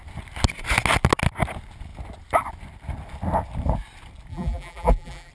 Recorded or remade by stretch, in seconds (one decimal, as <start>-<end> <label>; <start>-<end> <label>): 0.0-4.3 recorded; 4.3-5.3 remade

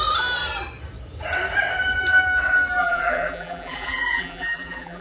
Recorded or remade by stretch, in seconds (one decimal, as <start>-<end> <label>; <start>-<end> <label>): 0.0-2.8 recorded; 2.8-5.0 remade

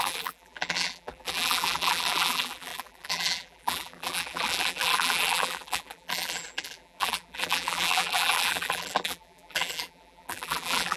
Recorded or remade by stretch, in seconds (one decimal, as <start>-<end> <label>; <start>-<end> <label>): 0.0-11.0 remade

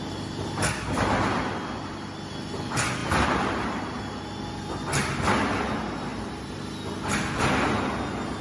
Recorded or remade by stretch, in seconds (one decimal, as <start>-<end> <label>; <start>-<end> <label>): 0.0-3.0 recorded; 3.0-3.8 remade; 3.8-6.1 recorded; 6.1-6.6 remade; 6.6-8.4 recorded